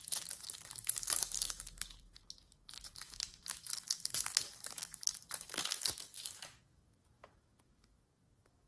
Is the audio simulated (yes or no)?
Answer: yes